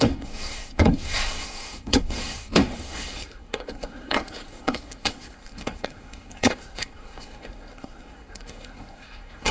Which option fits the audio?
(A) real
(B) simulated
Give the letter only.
B